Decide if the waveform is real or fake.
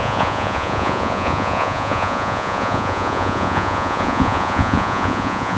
fake